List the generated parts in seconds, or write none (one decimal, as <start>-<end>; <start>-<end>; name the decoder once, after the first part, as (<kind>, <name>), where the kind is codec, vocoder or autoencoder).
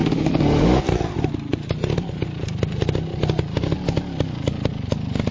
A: 0.0-0.8 (autoencoder, DAC-VAE)